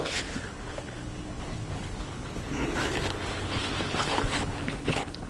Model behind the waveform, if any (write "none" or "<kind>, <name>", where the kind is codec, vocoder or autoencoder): codec, HILCodec